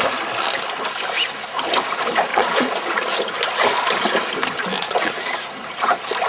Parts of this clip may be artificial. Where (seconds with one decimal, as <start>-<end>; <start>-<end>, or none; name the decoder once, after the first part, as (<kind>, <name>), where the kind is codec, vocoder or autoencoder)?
2.3-3.1 (vocoder, Vocos); 4.8-5.4